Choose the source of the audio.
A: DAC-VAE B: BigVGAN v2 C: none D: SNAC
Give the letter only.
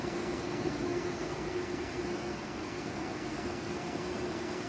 D